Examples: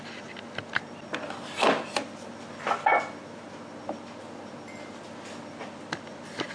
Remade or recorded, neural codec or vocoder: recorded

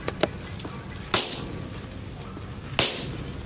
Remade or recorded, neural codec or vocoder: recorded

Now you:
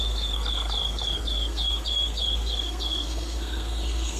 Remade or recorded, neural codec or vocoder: remade, codec, SNAC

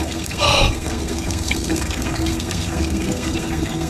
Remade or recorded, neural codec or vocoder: remade, codec, SNAC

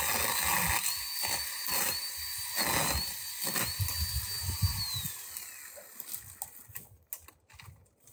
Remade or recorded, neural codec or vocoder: recorded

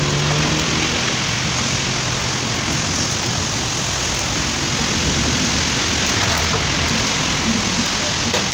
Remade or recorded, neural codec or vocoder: recorded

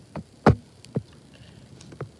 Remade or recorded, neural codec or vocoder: recorded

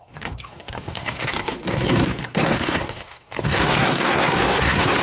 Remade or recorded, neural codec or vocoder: remade, codec, SNAC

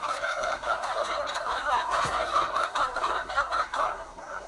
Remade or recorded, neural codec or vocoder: remade, codec, SNAC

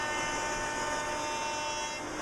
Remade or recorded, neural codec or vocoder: recorded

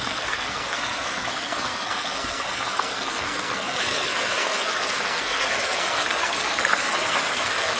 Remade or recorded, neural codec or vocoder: remade, codec, SNAC